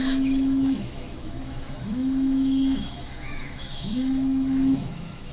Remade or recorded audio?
remade